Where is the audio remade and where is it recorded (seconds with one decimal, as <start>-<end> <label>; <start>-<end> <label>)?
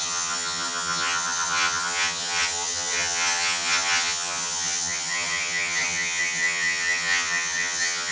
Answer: 0.0-8.1 remade